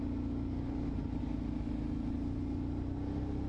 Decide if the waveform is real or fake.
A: real